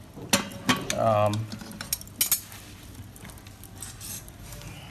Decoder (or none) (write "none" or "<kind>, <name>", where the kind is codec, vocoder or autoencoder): none